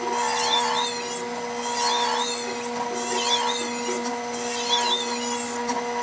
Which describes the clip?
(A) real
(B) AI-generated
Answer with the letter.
A